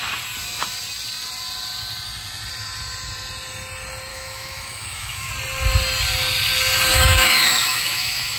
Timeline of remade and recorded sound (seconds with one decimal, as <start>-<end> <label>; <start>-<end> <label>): 0.0-4.1 recorded; 4.1-5.3 remade; 5.3-6.9 recorded; 6.9-8.4 remade